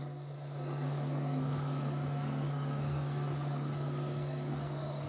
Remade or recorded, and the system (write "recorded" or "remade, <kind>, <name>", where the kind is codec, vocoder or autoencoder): remade, codec, SNAC